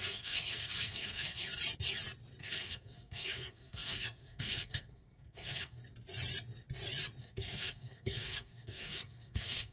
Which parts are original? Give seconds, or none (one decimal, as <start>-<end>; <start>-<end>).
1.5-2.4; 5.8-7.2